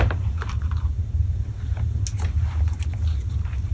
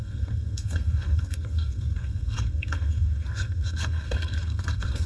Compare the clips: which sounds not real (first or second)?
second